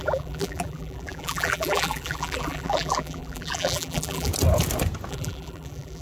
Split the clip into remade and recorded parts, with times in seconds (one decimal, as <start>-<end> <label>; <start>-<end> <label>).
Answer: 0.0-4.3 remade; 4.3-5.1 recorded; 5.1-6.0 remade

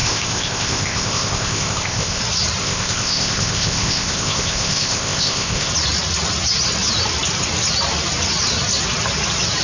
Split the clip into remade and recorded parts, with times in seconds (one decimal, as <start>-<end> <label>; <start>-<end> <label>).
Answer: 0.0-2.2 remade; 2.2-2.6 recorded; 2.6-5.7 remade; 5.7-9.6 recorded